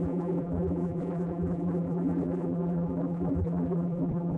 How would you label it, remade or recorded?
remade